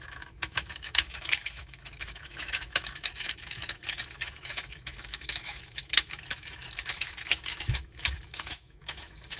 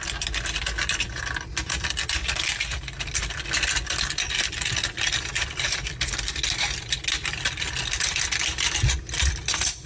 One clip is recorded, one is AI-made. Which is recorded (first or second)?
second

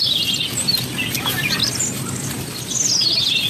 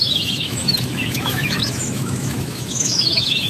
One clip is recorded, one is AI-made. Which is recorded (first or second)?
first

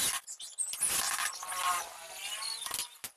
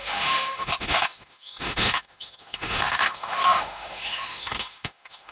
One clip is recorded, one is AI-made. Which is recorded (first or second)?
first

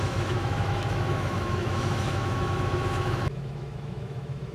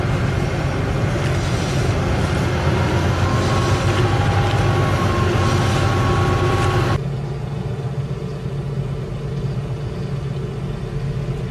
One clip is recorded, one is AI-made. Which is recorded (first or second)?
second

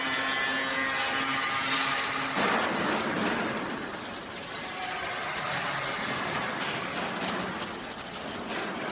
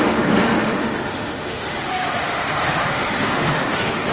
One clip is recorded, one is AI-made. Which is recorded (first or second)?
first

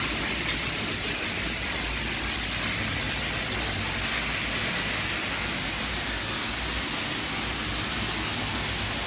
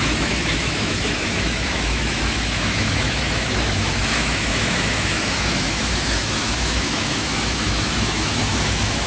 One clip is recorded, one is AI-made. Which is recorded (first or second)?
first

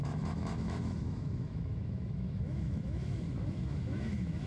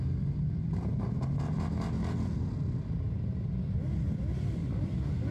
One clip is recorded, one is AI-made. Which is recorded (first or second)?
second